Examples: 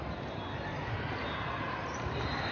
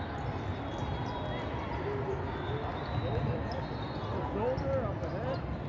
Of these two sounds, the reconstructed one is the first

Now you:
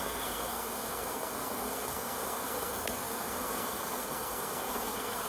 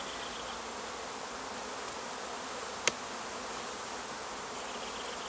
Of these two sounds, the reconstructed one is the first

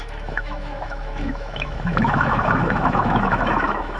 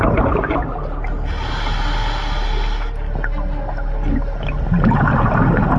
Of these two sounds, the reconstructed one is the first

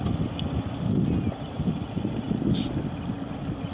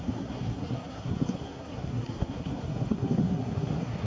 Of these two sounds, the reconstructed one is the second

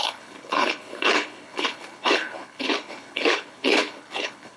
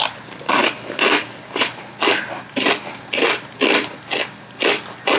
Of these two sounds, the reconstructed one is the first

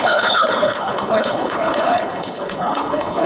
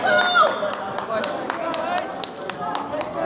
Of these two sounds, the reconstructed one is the first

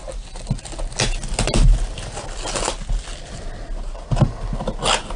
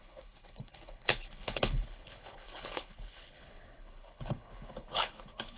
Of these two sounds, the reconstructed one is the second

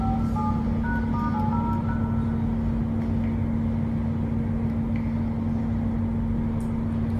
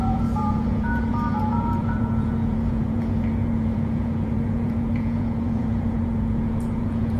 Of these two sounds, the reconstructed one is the second